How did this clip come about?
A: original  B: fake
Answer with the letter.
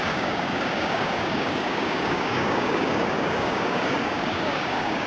B